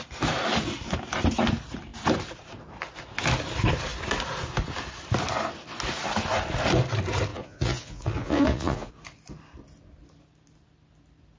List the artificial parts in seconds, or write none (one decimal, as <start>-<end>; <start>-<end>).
7.3-8.9